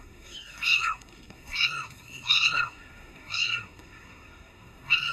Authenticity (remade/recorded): remade